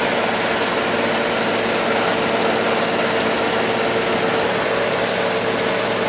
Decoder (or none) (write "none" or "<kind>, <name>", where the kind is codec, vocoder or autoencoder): none